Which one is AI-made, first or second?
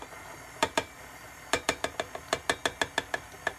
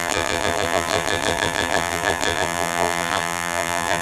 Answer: second